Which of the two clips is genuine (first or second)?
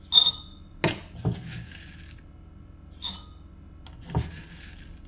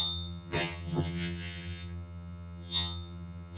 first